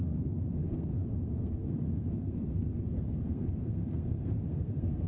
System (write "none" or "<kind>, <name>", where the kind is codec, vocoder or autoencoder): codec, SNAC